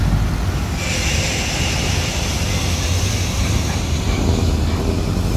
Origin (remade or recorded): recorded